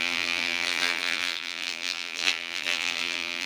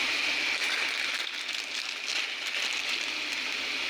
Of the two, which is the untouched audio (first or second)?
second